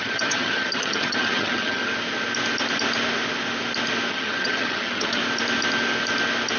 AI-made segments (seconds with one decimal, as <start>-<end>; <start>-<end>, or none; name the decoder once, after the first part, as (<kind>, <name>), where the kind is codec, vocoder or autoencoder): 0.0-1.9 (vocoder, HiFi-GAN); 4.1-5.2